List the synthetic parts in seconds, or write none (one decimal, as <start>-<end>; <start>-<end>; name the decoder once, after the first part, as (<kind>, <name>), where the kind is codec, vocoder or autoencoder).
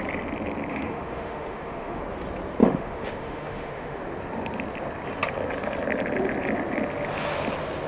0.7-2.0 (autoencoder, DAC-VAE); 2.6-4.0